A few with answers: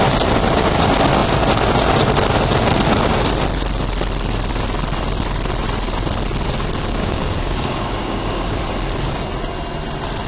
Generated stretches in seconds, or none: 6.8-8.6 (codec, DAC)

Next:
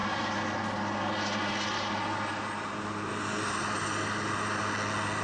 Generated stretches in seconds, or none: none

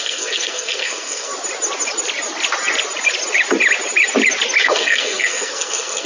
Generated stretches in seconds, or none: 0.0-1.3 (codec, SNAC); 4.6-6.1

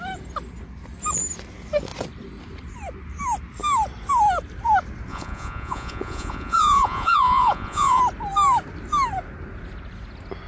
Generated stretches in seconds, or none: 5.1-8.0 (vocoder, Vocos)

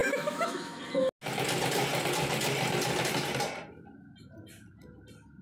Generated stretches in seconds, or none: 0.0-0.8 (autoencoder, DAC-VAE)

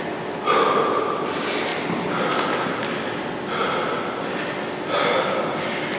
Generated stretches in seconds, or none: none

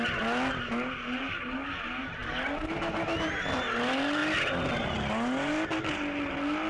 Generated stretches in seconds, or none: none